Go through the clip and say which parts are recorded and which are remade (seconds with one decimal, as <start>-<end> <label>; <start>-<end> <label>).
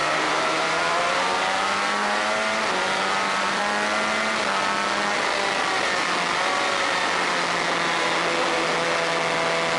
0.0-3.6 remade; 3.6-9.8 recorded